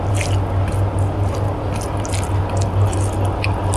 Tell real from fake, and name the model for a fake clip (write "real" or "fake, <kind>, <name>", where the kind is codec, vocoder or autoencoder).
real